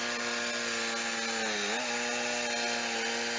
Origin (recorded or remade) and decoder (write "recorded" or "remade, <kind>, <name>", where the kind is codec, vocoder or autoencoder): recorded